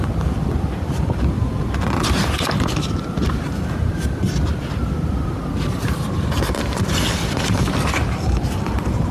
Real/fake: fake